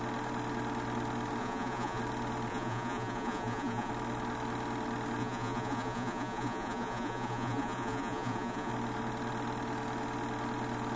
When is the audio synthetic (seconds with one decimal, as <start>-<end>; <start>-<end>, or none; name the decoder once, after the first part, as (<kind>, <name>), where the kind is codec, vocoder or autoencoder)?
1.4-2.0 (vocoder, Vocos); 2.5-3.9; 5.2-8.7